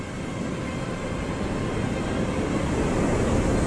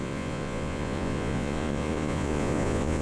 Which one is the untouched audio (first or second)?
first